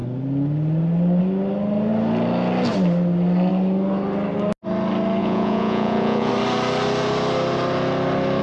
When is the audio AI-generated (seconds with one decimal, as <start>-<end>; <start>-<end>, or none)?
5.2-6.3